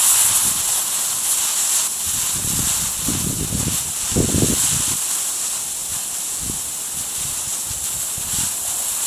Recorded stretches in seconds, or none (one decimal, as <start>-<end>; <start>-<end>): 0.0-5.8; 6.4-9.1